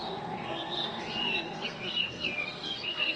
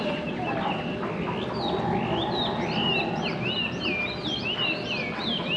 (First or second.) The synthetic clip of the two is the first